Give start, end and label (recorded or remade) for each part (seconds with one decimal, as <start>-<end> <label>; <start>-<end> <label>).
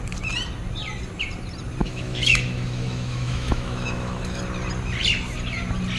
0.0-1.8 recorded; 1.8-4.4 remade; 4.4-6.0 recorded